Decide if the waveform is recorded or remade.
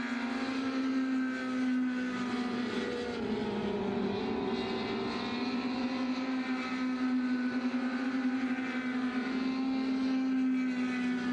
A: recorded